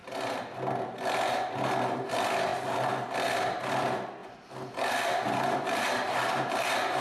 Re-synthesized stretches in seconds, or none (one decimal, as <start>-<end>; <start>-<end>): none